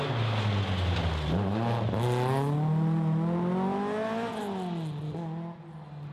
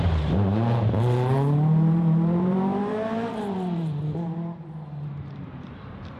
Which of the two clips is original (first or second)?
first